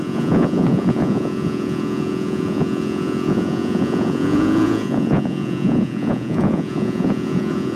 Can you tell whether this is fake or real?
fake